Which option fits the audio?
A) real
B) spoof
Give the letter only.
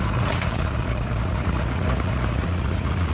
B